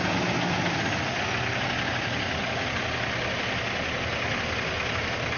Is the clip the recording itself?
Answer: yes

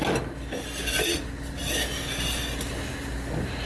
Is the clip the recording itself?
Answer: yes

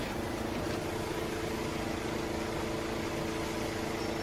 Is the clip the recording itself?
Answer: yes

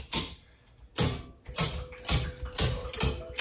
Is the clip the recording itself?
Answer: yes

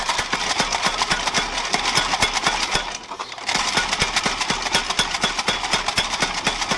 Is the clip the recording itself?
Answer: yes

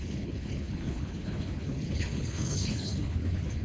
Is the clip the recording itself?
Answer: no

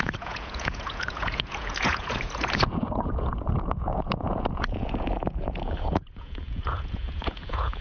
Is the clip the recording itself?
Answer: no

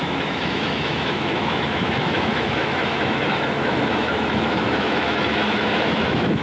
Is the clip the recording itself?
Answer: no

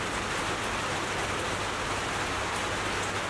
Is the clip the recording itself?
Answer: yes